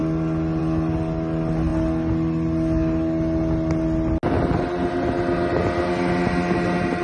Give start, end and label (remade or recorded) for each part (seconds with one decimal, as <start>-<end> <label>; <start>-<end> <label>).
0.0-7.0 recorded